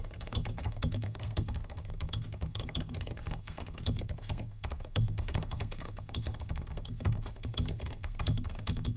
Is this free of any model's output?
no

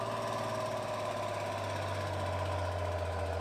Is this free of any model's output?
yes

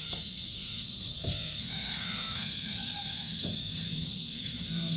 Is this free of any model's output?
no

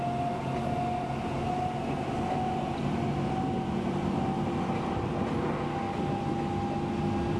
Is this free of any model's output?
yes